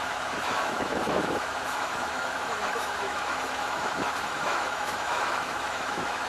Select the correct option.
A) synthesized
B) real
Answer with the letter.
A